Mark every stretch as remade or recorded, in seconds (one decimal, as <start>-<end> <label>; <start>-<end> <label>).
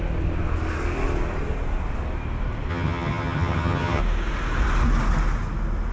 0.0-2.7 recorded; 2.7-4.0 remade; 4.0-5.9 recorded